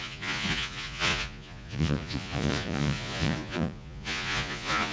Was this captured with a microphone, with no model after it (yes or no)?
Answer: no